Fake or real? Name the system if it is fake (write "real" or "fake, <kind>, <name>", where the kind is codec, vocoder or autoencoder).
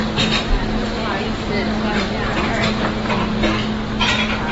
real